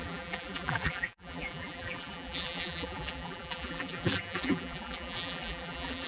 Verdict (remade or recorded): remade